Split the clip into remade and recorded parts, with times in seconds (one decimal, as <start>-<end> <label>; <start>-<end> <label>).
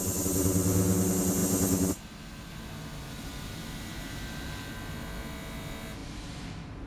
0.0-6.9 recorded